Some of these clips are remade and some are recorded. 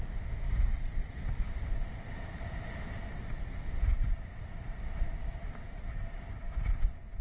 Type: recorded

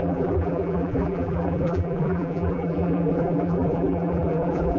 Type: remade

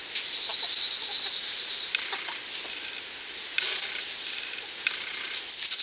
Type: recorded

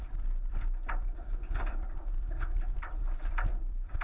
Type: remade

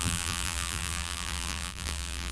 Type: remade